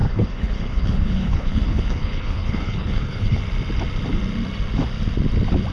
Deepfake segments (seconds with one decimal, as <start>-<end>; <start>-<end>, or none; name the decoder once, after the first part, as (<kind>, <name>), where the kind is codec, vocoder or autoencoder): 0.0-3.4 (codec, HILCodec)